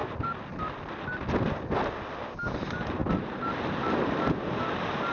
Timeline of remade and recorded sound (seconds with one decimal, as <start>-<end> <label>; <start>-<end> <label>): 0.0-5.1 recorded